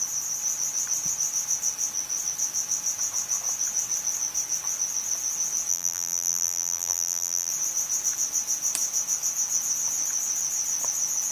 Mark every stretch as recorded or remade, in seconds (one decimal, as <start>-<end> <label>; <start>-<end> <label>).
0.0-5.7 recorded; 5.7-7.5 remade; 7.5-11.3 recorded